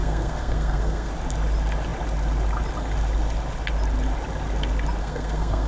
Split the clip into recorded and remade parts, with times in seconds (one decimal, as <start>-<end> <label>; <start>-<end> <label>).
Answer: 0.0-1.1 remade; 1.1-5.0 recorded; 5.0-5.7 remade